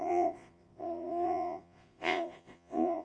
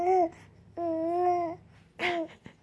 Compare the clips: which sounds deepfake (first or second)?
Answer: first